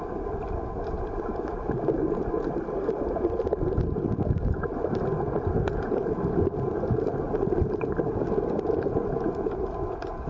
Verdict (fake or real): real